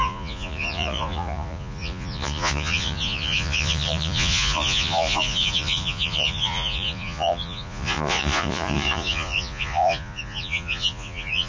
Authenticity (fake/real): fake